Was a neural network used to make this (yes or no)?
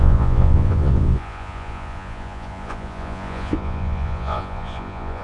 yes